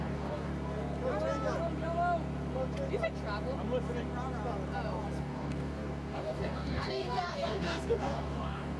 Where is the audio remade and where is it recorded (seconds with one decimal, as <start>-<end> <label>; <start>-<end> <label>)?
0.0-0.5 remade; 0.5-5.2 recorded; 5.2-8.8 remade